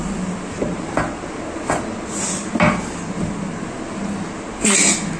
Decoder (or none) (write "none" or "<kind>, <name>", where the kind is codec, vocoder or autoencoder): none